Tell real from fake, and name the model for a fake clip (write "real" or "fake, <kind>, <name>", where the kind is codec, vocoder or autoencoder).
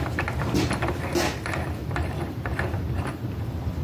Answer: fake, vocoder, BigVGAN v2